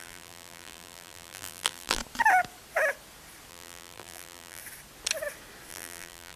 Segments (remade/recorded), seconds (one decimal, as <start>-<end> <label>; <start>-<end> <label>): 0.0-2.0 remade; 2.0-3.5 recorded; 3.5-4.6 remade; 4.6-5.7 recorded; 5.7-6.4 remade